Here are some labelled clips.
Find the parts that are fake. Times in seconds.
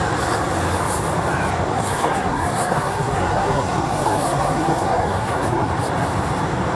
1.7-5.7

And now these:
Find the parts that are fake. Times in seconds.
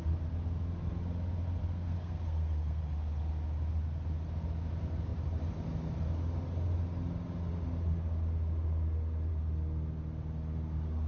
1.6-2.8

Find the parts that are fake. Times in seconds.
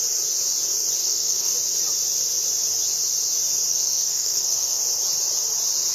1.0-1.5; 3.7-4.8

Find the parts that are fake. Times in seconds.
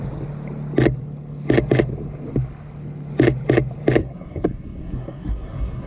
4.0-5.9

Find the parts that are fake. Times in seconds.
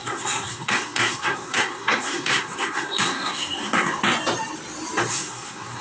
0.0-4.0; 5.1-5.8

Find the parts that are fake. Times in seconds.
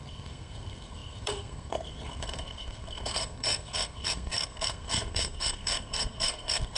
0.0-6.8